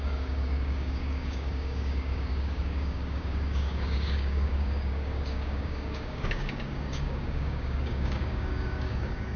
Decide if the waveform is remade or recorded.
remade